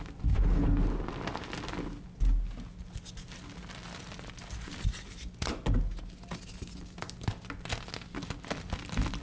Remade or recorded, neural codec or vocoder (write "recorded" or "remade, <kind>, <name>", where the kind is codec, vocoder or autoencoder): recorded